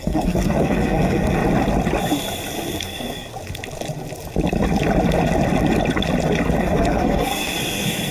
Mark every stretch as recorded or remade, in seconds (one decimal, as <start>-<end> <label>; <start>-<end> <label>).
0.0-1.4 remade; 1.4-2.8 recorded; 2.8-3.3 remade; 3.3-6.6 recorded; 6.6-8.1 remade